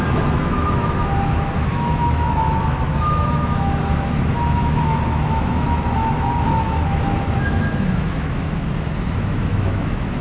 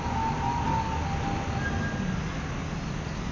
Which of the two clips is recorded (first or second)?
second